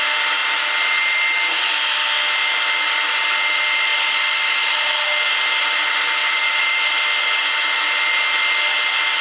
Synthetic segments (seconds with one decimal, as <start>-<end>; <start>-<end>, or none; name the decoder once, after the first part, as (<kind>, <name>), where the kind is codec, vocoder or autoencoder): 3.9-4.7 (vocoder, BigVGAN v2); 6.2-6.9